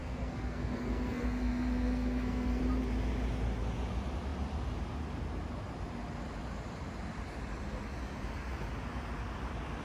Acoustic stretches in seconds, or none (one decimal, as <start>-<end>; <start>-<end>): 2.6-9.8